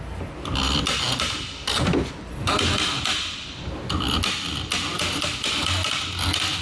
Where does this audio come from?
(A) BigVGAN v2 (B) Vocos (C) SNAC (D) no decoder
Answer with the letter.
D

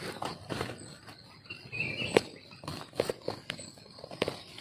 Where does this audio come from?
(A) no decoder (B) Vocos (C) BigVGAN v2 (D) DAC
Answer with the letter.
A